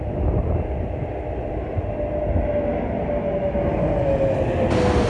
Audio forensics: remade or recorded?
recorded